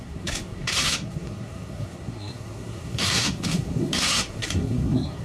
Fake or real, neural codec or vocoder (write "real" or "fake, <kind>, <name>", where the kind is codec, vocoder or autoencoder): fake, codec, SNAC